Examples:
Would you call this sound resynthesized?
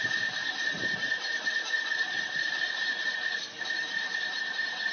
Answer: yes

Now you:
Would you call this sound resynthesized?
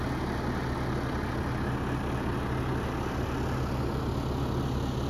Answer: no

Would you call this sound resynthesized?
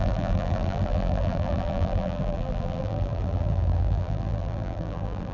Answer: yes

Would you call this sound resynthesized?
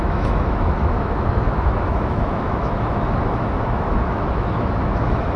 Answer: yes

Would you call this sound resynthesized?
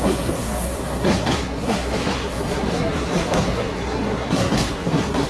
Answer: yes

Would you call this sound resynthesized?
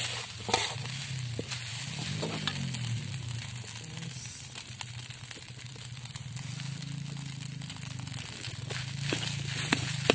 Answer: no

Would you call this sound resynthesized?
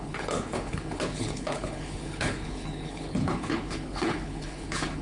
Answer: yes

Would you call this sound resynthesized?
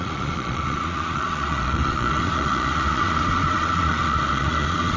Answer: yes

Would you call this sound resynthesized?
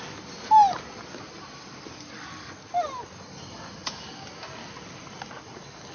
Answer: no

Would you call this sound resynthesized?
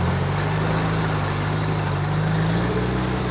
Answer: yes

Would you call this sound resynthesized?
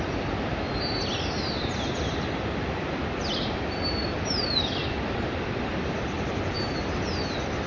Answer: yes